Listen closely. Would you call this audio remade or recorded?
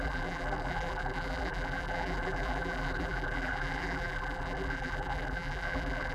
remade